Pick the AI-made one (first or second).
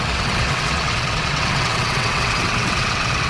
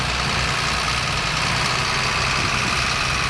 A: first